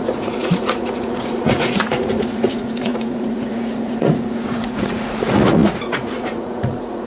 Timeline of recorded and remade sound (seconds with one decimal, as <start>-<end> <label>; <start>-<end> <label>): 0.0-7.1 remade